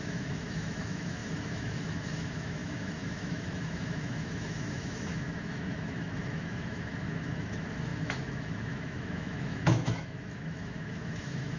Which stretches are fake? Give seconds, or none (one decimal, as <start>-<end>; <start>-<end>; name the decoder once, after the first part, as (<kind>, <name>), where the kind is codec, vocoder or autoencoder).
0.0-11.6 (autoencoder, DAC-VAE)